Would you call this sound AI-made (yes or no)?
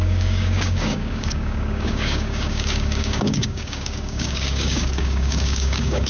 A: yes